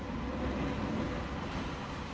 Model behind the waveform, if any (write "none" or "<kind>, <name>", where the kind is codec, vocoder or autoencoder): none